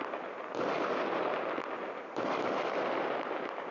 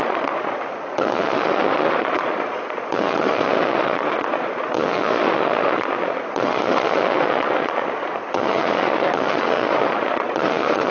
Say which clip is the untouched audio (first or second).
first